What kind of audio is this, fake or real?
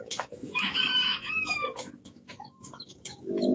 fake